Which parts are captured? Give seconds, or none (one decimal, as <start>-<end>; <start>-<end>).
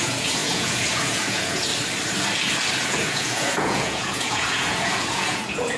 1.7-2.8